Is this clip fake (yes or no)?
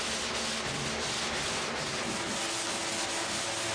no